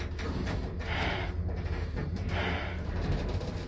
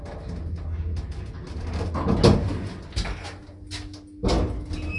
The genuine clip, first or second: second